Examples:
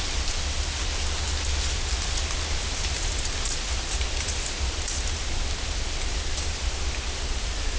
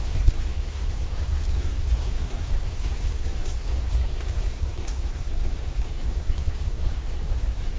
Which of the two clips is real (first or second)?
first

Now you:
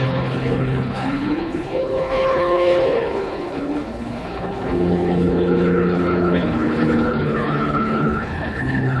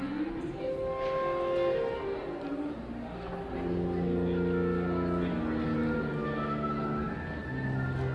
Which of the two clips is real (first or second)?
second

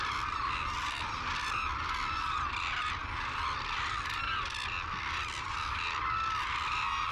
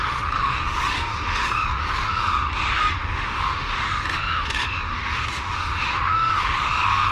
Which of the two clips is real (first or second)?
first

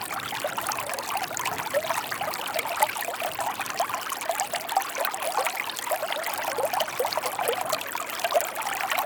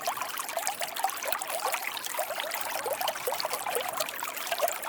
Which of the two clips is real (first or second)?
first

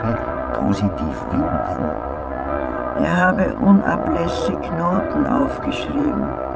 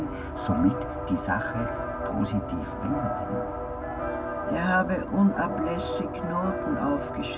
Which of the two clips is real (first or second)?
second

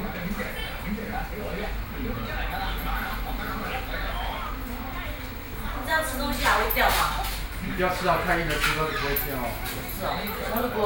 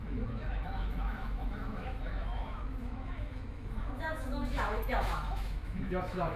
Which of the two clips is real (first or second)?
first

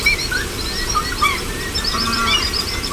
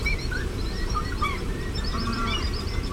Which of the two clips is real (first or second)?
first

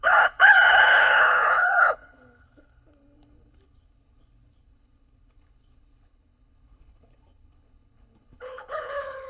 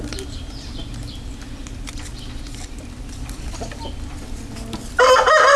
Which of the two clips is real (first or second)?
second